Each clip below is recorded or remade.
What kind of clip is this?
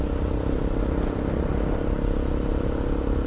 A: recorded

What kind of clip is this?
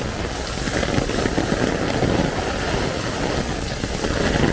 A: recorded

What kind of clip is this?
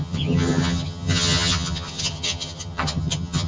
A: remade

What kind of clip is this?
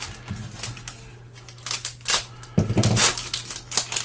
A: recorded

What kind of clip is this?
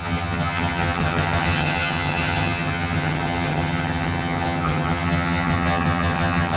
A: remade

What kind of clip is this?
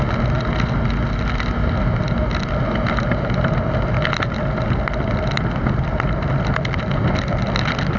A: recorded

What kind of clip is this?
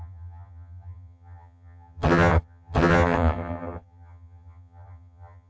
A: remade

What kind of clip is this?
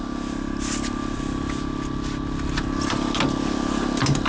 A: recorded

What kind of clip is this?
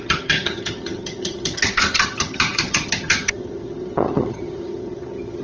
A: remade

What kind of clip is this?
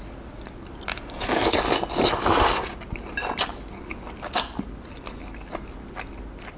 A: recorded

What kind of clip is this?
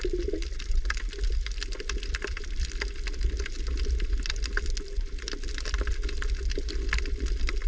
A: recorded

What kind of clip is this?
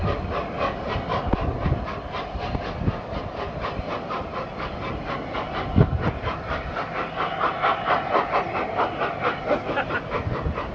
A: recorded